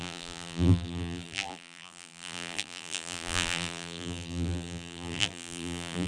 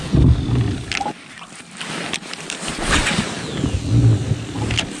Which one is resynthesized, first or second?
first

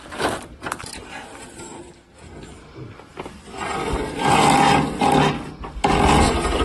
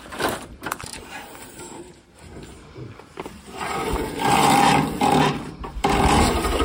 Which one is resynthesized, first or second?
second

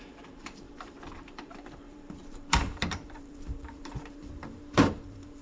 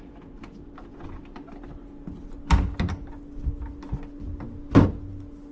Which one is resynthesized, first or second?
first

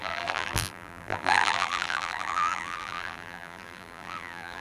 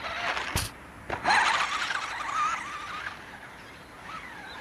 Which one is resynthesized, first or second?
first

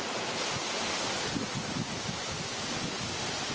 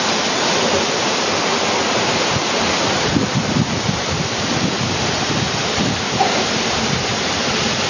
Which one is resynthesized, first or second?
second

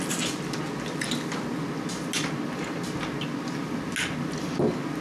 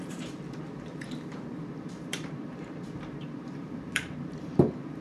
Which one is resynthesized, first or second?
second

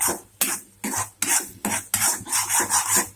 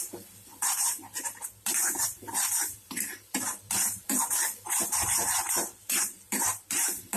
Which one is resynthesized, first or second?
second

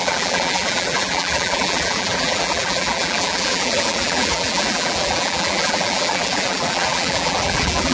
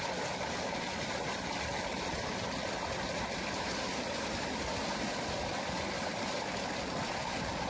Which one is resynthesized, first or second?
first